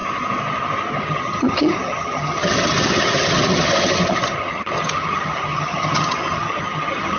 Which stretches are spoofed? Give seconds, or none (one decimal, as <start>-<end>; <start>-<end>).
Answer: 1.0-7.2